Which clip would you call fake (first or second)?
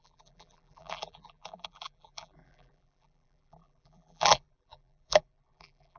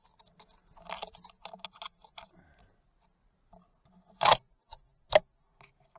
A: first